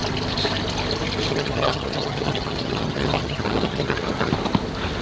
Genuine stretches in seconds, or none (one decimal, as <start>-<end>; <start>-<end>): 0.0-1.3; 4.3-5.0

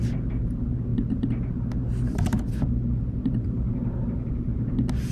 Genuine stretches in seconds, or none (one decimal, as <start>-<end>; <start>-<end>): 0.0-5.1

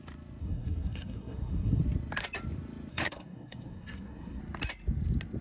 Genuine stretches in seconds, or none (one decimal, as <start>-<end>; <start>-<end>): 0.0-0.4; 1.8-2.9; 4.4-5.4

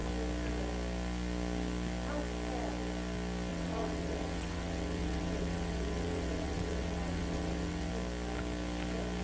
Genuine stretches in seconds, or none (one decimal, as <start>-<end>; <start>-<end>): 0.0-3.5; 7.9-9.2

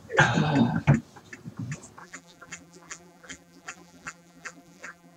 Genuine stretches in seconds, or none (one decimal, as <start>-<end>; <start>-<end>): 0.0-2.0

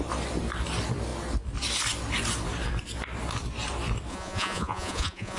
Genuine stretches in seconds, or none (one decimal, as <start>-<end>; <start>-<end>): 0.0-4.1

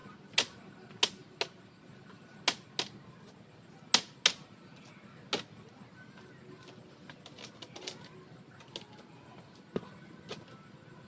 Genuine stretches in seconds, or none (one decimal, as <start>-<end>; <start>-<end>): 0.0-11.1

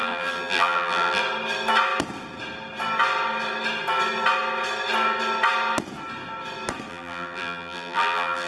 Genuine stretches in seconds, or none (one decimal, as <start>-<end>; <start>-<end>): 1.2-6.9